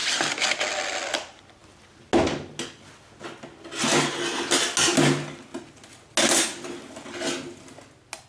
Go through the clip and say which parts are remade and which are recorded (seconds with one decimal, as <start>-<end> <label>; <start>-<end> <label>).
0.0-8.3 recorded